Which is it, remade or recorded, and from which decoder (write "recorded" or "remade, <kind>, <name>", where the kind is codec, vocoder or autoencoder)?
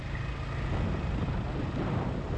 recorded